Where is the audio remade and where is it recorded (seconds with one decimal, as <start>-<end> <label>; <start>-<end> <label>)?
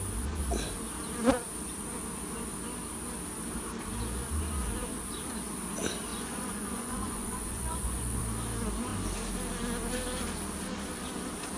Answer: 0.0-6.1 recorded; 6.1-8.2 remade; 8.2-11.6 recorded